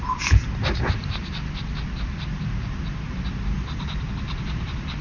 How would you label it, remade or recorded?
recorded